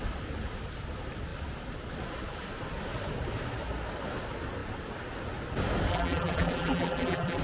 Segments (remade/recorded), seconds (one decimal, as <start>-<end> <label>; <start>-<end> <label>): 0.0-5.9 recorded; 5.9-7.4 remade